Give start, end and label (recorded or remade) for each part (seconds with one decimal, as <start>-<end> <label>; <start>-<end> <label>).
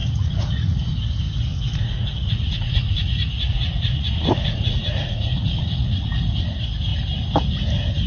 0.0-0.9 remade; 0.9-1.5 recorded; 1.5-6.2 remade; 6.2-8.1 recorded